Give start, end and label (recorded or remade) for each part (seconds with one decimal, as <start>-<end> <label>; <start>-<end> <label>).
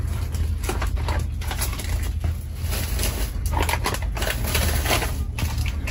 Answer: 0.0-5.9 recorded